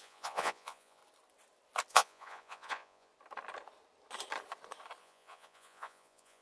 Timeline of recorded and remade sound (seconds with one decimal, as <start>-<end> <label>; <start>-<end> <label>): 0.0-1.0 remade; 1.0-1.9 recorded; 1.9-3.1 remade; 3.1-5.0 recorded; 5.0-6.4 remade